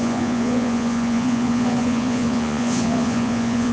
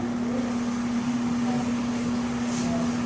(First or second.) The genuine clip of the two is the second